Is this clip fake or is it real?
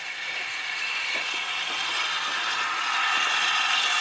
real